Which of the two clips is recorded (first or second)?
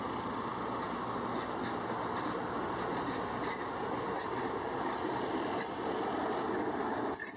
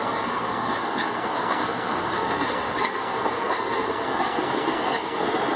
first